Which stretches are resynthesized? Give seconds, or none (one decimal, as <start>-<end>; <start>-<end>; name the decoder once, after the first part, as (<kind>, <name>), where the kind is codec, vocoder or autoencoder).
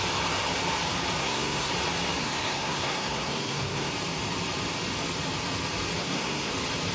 1.2-1.7 (codec, SNAC); 2.2-3.9; 6.0-6.5